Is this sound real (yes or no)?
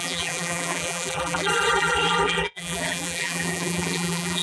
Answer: no